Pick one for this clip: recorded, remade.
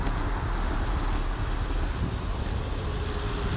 recorded